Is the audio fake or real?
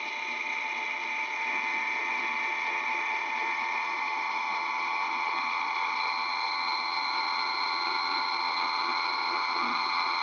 fake